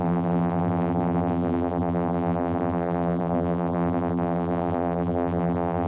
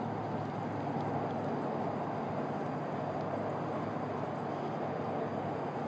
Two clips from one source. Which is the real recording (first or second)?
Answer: second